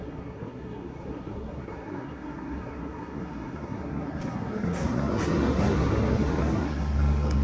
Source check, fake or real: fake